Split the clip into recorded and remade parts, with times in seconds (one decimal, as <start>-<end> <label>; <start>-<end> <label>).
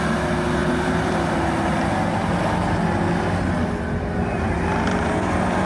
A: 0.0-5.7 recorded